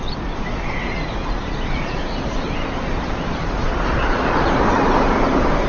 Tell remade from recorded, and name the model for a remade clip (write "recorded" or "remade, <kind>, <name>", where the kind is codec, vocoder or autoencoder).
remade, vocoder, BigVGAN v2